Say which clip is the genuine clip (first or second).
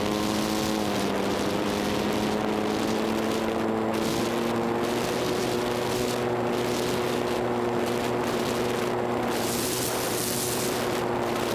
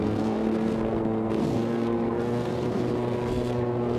first